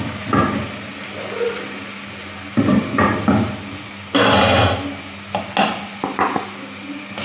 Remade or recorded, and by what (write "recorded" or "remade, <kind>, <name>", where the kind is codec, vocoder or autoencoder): recorded